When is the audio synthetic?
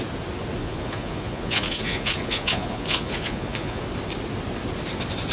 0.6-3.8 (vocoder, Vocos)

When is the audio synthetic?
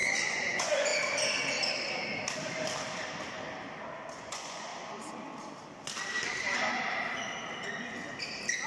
0.0-0.9 (vocoder, Vocos); 4.2-4.7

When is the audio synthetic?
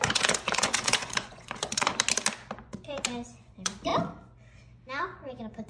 0.0-1.9 (vocoder, Vocos); 2.5-3.9; 5.0-5.7